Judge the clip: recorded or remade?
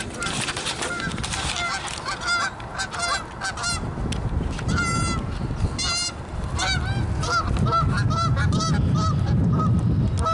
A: recorded